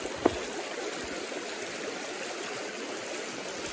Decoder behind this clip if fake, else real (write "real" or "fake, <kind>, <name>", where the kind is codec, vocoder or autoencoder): real